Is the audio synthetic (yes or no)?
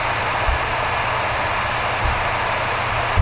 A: no